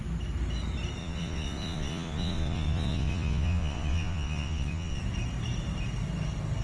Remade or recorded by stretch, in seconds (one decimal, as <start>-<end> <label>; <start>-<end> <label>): 0.0-1.0 recorded; 1.0-5.0 remade; 5.0-6.6 recorded